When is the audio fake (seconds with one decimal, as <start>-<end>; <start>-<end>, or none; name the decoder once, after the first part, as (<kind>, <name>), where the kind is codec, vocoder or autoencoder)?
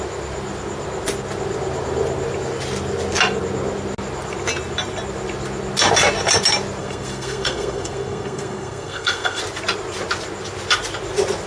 6.8-9.4 (codec, SNAC)